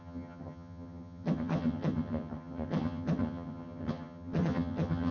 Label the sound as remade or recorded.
remade